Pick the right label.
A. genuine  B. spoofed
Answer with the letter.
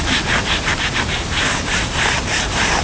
B